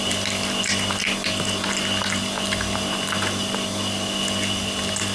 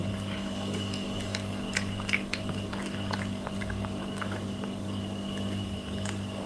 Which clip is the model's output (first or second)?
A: second